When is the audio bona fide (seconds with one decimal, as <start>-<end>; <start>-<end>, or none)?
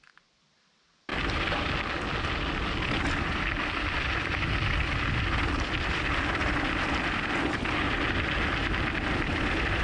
0.0-6.4; 7.5-8.6